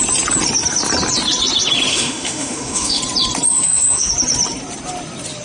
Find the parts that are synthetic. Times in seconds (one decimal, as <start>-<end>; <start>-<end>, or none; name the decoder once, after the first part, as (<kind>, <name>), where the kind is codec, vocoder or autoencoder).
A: 1.9-3.0 (autoencoder, DAC-VAE); 3.5-4.1